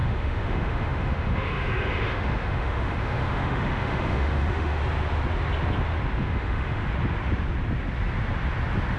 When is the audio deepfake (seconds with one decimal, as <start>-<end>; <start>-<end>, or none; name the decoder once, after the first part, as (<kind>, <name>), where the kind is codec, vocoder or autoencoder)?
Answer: 0.0-4.8 (autoencoder, DAC-VAE); 6.2-6.8